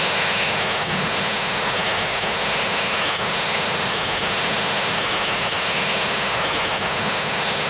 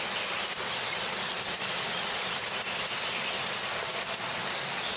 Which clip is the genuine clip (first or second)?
second